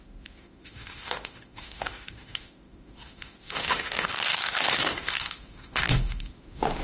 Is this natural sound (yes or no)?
no